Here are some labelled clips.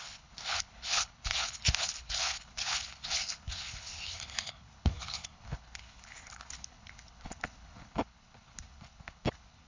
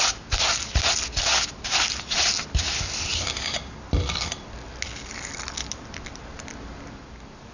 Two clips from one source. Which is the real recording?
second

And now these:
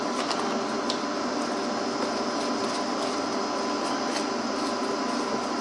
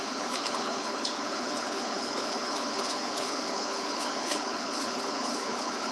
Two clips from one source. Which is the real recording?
first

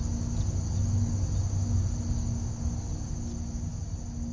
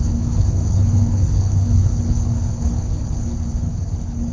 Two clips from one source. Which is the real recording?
first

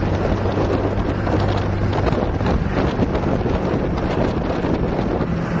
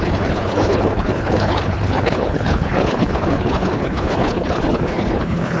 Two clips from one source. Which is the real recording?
first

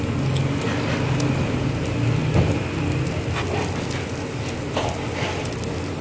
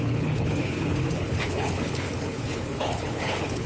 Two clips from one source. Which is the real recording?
first